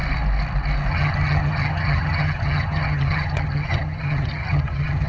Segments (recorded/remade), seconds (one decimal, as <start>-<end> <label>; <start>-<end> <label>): 0.0-0.9 recorded; 0.9-5.1 remade